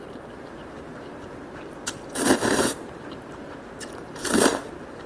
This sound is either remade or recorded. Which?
remade